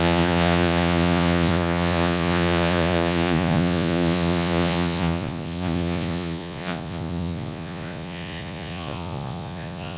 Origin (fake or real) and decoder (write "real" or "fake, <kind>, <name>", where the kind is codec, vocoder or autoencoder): fake, vocoder, Vocos